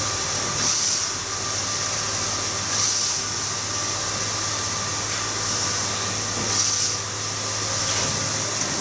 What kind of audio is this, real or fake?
real